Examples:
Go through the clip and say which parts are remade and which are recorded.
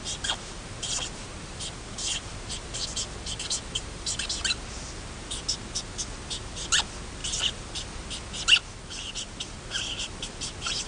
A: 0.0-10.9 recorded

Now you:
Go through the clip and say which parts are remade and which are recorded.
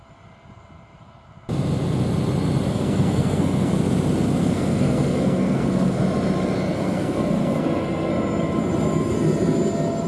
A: 0.0-2.7 recorded; 2.7-3.8 remade; 3.8-4.4 recorded; 4.4-6.0 remade; 6.0-6.7 recorded; 6.7-8.1 remade; 8.1-10.1 recorded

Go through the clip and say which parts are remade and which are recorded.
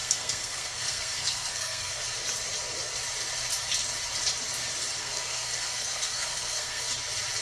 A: 0.0-2.0 remade; 2.0-5.0 recorded; 5.0-6.8 remade; 6.8-7.4 recorded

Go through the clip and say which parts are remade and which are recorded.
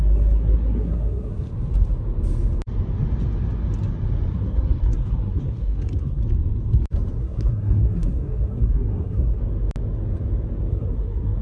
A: 0.0-1.5 remade; 1.5-4.3 recorded; 4.3-6.2 remade; 6.2-7.2 recorded; 7.2-9.4 remade; 9.4-10.7 recorded; 10.7-11.4 remade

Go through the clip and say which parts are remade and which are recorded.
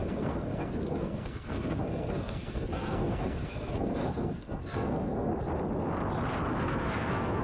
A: 0.0-5.3 remade; 5.3-6.6 recorded; 6.6-7.4 remade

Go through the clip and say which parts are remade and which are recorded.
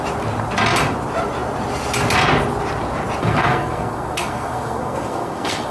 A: 0.0-3.2 recorded; 3.2-5.7 remade